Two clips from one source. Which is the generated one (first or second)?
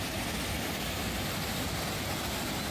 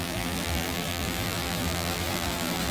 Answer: second